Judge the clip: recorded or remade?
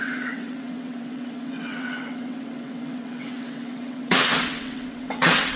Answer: remade